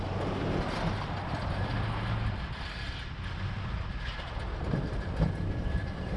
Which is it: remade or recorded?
recorded